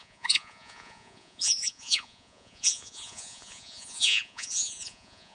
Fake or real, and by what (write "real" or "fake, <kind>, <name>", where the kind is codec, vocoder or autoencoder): fake, vocoder, Vocos